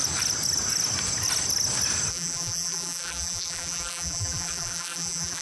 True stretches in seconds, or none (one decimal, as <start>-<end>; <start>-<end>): 0.0-2.1